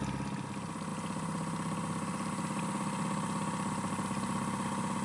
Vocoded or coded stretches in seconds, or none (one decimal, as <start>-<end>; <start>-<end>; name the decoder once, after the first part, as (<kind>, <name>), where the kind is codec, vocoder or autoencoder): none